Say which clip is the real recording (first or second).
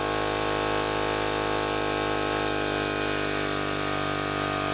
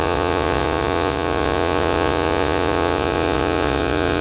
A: first